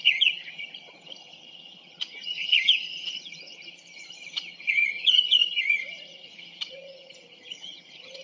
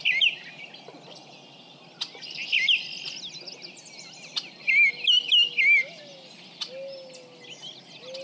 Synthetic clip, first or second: first